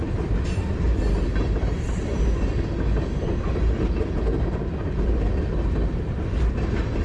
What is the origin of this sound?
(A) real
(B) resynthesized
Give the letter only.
A